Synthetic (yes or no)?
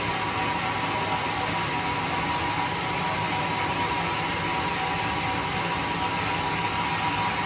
no